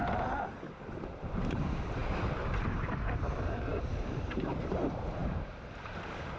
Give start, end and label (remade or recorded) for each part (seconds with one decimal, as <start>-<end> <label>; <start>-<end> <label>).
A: 0.0-1.2 recorded; 1.2-6.4 remade